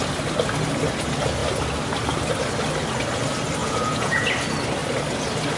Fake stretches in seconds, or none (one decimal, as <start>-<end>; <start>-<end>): 3.6-4.3